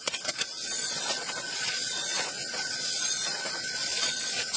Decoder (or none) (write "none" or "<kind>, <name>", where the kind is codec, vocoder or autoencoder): vocoder, Vocos